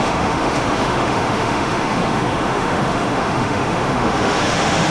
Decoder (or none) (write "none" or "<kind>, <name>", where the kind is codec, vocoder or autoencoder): autoencoder, DAC-VAE